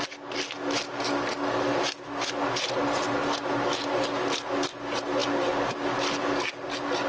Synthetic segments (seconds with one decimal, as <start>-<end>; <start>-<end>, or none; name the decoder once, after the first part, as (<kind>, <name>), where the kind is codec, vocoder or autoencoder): none